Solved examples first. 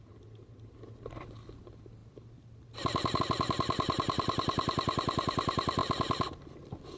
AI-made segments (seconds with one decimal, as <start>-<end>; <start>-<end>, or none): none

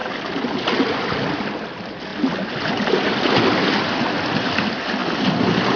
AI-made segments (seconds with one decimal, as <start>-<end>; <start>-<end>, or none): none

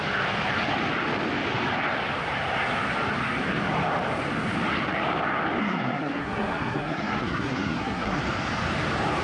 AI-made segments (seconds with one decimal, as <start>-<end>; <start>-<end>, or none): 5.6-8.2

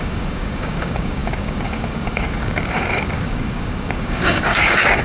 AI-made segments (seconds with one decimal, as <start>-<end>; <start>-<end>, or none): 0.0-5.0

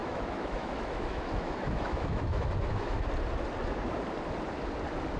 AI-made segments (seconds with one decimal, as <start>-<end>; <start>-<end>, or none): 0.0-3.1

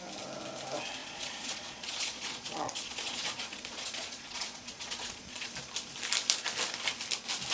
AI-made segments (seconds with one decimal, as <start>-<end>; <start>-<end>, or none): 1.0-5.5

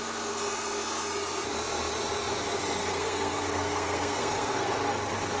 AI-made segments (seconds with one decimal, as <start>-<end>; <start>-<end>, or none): 2.8-4.7

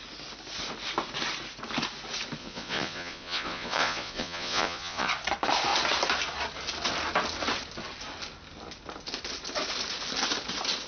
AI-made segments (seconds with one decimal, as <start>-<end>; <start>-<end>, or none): 2.4-5.1